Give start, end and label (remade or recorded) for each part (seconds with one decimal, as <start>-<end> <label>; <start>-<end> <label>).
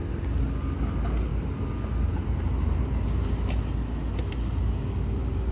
0.0-5.5 recorded